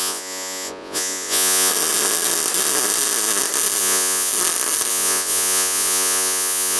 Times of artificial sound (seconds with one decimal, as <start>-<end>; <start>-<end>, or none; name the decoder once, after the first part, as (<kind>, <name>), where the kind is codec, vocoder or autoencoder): 0.0-1.7 (vocoder, Vocos); 3.8-4.3; 4.9-6.8